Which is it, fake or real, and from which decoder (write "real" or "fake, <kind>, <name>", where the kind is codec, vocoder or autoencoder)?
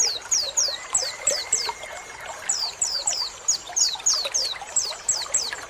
real